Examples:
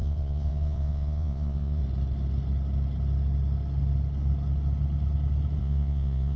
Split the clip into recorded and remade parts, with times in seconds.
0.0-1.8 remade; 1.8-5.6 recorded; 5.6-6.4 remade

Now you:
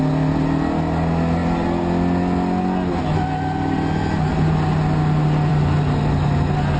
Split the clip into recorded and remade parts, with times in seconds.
0.0-6.8 recorded

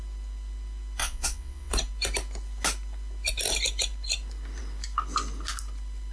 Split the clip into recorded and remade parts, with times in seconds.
0.0-1.0 recorded; 1.0-1.7 remade; 1.7-6.1 recorded

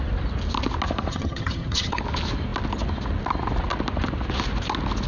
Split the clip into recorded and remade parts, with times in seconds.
0.0-1.1 recorded; 1.1-2.0 remade; 2.0-5.1 recorded

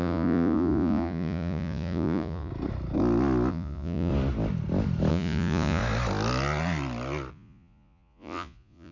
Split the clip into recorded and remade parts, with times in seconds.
0.0-2.5 remade; 2.5-3.5 recorded; 3.5-4.1 remade; 4.1-5.1 recorded; 5.1-5.8 remade; 5.8-7.3 recorded; 7.3-8.9 remade

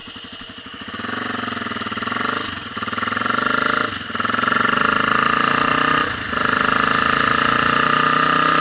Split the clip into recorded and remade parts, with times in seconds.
0.0-8.6 recorded

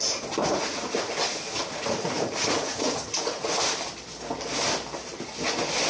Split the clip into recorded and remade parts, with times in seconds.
0.0-0.4 recorded; 0.4-1.1 remade; 1.1-1.6 recorded; 1.6-3.7 remade; 3.7-5.9 recorded